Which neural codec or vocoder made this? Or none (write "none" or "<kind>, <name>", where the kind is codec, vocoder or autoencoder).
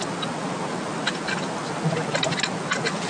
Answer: none